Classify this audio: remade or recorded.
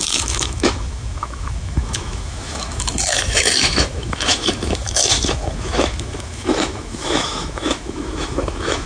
remade